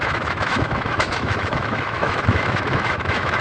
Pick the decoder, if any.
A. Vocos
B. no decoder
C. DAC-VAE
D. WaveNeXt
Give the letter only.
C